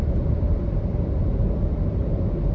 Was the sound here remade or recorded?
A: recorded